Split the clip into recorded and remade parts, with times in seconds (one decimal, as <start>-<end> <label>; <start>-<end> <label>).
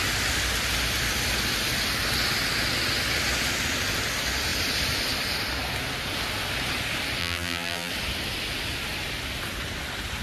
0.0-7.2 recorded; 7.2-7.9 remade; 7.9-10.2 recorded